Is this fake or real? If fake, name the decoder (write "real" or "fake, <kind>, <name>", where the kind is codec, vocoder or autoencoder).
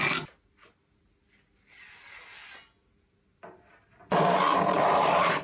real